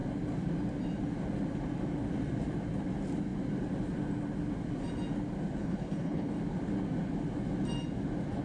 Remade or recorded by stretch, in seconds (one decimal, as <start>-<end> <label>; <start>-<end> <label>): 0.0-5.6 recorded; 5.6-6.4 remade; 6.4-8.4 recorded